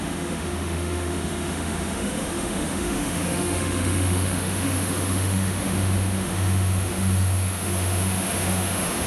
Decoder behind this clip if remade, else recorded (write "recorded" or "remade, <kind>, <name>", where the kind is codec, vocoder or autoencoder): remade, autoencoder, DAC-VAE